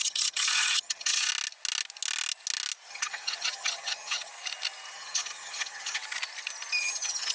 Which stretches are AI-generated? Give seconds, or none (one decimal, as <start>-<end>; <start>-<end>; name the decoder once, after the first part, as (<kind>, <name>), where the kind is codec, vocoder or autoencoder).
0.0-1.3 (vocoder, HiFi-GAN); 2.9-4.3; 4.9-6.0; 6.8-7.3